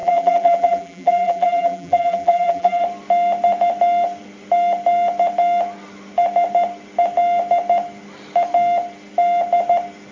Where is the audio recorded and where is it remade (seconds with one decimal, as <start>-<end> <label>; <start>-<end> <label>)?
0.0-2.8 remade; 2.8-10.1 recorded